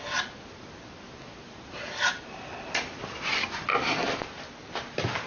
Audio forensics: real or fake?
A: real